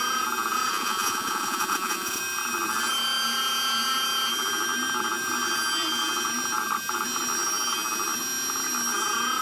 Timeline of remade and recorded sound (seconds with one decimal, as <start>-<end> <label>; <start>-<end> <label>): 0.0-0.7 recorded; 0.7-2.2 remade; 2.2-9.4 recorded